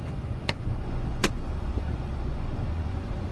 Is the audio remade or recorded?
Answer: remade